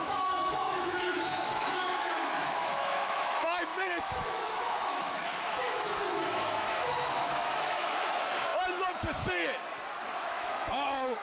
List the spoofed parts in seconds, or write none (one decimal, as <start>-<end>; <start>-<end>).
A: 0.0-8.5; 10.2-11.2